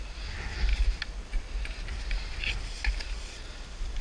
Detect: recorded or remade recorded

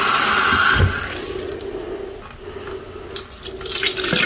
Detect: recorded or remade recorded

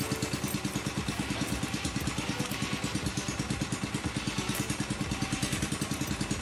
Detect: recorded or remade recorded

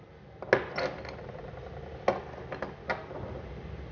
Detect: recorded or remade recorded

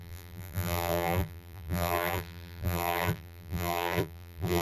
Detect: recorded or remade remade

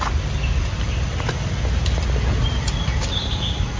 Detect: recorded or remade recorded